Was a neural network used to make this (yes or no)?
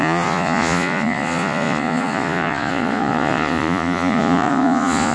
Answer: yes